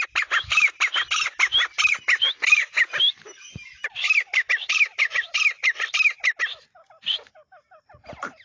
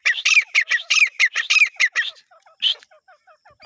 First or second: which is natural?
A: second